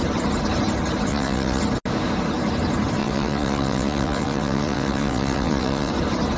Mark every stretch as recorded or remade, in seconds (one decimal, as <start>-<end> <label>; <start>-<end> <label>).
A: 0.0-1.1 recorded; 1.1-1.6 remade; 1.6-3.0 recorded; 3.0-5.9 remade; 5.9-6.4 recorded

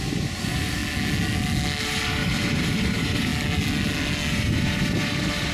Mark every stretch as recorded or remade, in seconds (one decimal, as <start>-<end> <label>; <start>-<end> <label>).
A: 0.0-0.8 remade; 0.8-1.8 recorded; 1.8-3.3 remade; 3.3-4.3 recorded; 4.3-5.5 remade

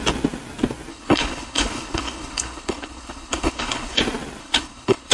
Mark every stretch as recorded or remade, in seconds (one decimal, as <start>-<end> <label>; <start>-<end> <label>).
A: 0.0-0.9 recorded; 0.9-4.0 remade; 4.0-4.4 recorded; 4.4-5.1 remade

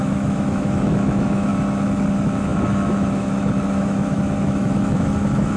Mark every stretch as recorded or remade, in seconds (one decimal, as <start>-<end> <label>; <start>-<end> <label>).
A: 0.0-1.5 remade; 1.5-2.1 recorded; 2.1-5.6 remade